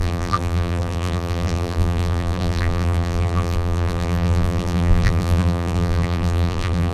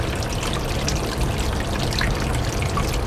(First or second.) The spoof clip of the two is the first